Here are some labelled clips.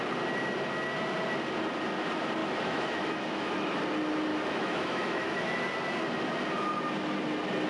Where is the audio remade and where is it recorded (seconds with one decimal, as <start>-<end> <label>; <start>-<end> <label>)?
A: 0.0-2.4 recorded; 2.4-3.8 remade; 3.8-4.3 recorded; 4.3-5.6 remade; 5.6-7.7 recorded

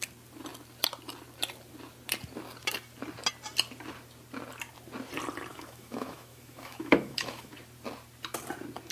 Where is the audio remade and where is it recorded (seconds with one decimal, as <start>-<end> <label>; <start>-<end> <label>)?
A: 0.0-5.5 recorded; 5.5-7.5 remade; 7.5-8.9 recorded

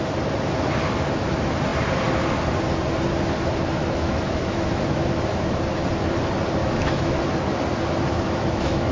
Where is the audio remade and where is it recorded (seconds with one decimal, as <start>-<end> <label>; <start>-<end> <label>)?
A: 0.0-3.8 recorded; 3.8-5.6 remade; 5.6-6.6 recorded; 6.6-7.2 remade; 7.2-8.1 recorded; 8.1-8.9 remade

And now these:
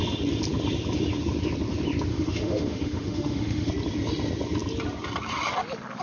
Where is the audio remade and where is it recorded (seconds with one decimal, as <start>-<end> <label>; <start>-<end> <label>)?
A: 0.0-2.1 recorded; 2.1-3.7 remade; 3.7-6.0 recorded